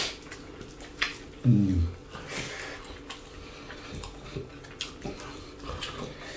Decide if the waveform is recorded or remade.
recorded